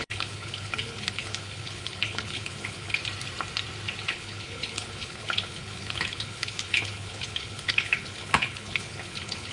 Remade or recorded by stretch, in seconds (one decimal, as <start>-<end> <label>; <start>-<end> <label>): 0.0-3.0 remade; 3.0-4.1 recorded; 4.1-9.5 remade